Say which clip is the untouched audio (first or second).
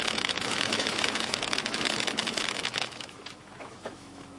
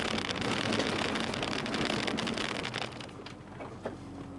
second